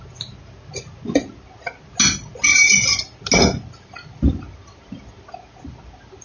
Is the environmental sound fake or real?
real